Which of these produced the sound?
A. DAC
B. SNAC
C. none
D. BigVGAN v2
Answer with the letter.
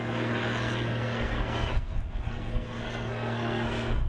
B